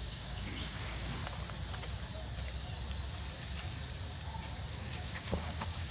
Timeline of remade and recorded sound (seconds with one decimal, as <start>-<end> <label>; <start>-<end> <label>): 0.0-1.2 remade; 1.2-4.7 recorded; 4.7-5.9 remade